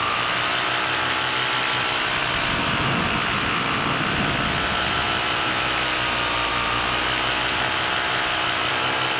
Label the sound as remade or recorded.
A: recorded